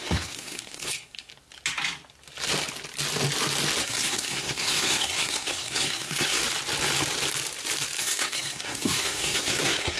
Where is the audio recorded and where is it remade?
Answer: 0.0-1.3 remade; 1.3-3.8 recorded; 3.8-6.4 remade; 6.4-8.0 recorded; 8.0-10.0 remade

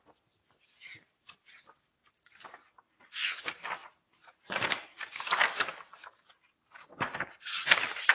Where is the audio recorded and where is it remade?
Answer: 0.0-3.8 recorded; 3.8-5.3 remade; 5.3-8.1 recorded